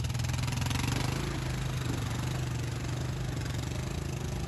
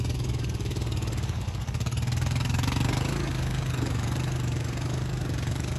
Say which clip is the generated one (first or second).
second